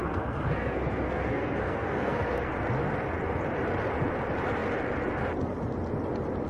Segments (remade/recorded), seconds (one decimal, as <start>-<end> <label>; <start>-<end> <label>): 0.0-2.5 remade; 2.5-6.5 recorded